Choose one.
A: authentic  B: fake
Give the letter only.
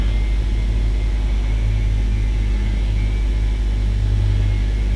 A